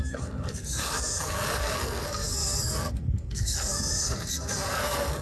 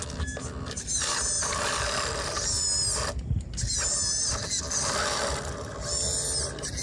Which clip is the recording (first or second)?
second